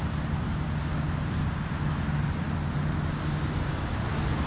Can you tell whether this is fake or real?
real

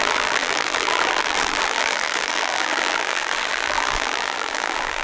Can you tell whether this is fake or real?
fake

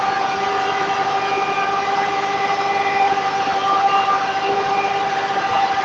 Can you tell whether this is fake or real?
real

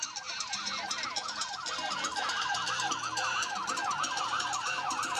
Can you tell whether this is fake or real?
fake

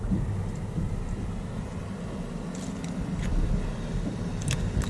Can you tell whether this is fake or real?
fake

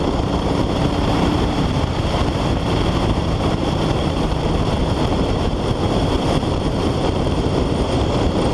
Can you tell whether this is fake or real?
fake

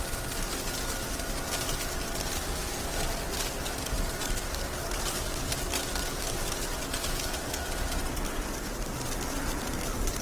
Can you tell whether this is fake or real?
real